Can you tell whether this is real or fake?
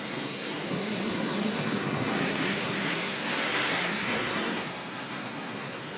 fake